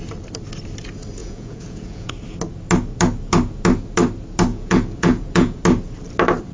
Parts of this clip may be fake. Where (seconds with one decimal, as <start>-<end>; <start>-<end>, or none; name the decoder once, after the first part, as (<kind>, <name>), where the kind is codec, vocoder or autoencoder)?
1.2-2.1 (vocoder, Vocos); 4.5-5.6